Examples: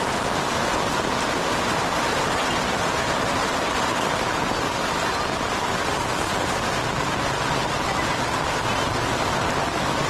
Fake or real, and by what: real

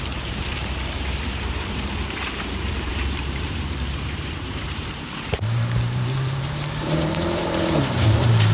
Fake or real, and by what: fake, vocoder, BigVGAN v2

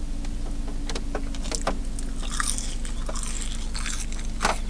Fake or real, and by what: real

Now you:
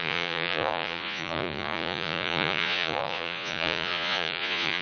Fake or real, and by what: fake, vocoder, Vocos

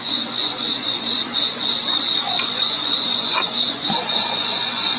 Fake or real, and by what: fake, vocoder, Vocos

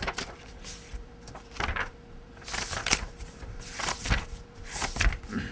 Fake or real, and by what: fake, vocoder, BigVGAN v2